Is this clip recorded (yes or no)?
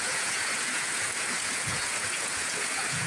no